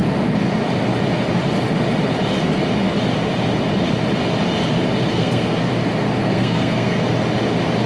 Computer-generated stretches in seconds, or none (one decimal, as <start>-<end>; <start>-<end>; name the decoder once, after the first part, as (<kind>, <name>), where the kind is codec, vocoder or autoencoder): 5.1-5.7 (codec, SNAC); 6.2-7.0